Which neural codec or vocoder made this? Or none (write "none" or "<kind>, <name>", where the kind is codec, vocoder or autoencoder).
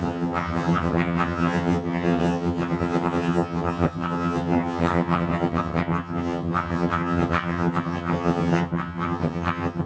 vocoder, HiFi-GAN